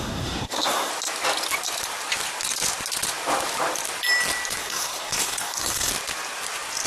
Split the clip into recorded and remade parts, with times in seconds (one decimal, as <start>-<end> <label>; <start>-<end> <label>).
0.0-0.9 remade; 0.9-4.6 recorded; 4.6-5.9 remade; 5.9-6.9 recorded

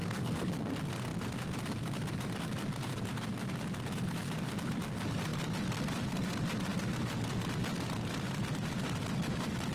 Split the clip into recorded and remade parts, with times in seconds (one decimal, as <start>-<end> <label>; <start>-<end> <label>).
0.0-0.7 remade; 0.7-9.7 recorded

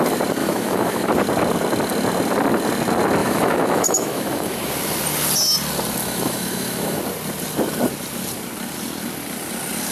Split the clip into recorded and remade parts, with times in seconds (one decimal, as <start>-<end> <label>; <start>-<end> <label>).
0.0-0.4 recorded; 0.4-1.1 remade; 1.1-3.2 recorded; 3.2-4.7 remade; 4.7-6.0 recorded; 6.0-7.0 remade; 7.0-9.9 recorded

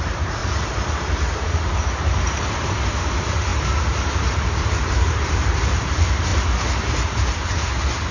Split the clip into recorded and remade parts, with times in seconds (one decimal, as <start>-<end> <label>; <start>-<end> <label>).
0.0-6.3 remade; 6.3-6.9 recorded; 6.9-8.1 remade

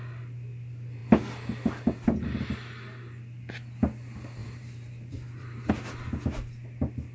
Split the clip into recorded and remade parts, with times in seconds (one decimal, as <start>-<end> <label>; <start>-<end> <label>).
0.0-4.4 recorded; 4.4-5.7 remade; 5.7-7.1 recorded

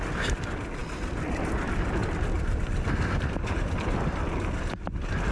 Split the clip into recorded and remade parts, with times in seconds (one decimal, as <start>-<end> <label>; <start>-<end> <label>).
0.0-2.0 recorded; 2.0-5.3 remade

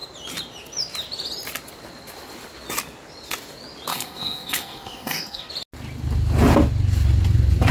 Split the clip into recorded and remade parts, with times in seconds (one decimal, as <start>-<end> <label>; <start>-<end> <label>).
0.0-3.9 recorded; 3.9-5.5 remade; 5.5-7.7 recorded